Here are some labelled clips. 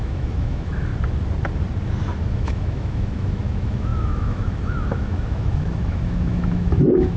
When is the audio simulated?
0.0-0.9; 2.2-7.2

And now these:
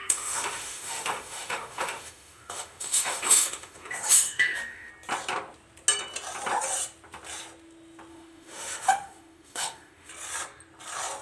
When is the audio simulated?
0.0-4.9; 8.1-10.1

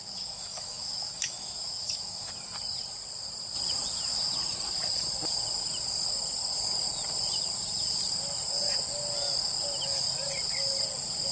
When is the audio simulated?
0.0-2.3

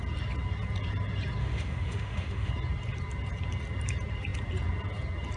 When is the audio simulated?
1.4-2.5

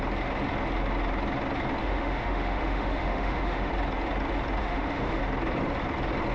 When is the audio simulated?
1.8-3.7; 4.6-5.2

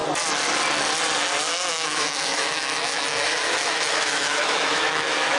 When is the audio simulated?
1.7-5.4

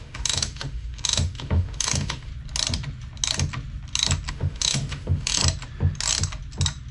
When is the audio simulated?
0.0-2.3; 4.3-5.4

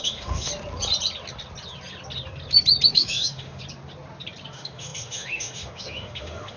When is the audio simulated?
0.0-0.5; 2.9-3.6; 4.5-6.6